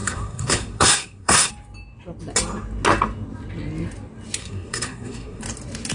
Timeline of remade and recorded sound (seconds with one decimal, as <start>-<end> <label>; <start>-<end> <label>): 0.0-1.5 remade; 1.5-4.4 recorded; 4.4-5.4 remade; 5.4-5.9 recorded